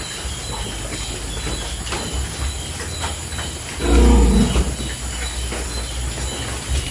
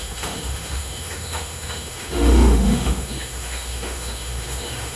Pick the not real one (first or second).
second